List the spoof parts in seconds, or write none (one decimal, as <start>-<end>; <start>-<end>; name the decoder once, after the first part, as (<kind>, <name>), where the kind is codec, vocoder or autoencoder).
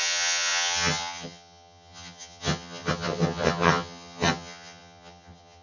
0.0-5.6 (vocoder, HiFi-GAN)